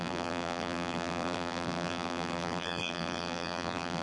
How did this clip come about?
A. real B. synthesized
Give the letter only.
B